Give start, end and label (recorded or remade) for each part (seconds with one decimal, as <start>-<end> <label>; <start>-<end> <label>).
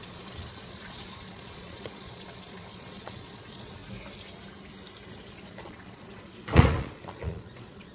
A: 0.0-3.8 remade; 3.8-5.1 recorded; 5.1-7.9 remade